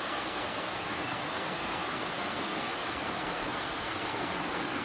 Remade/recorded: remade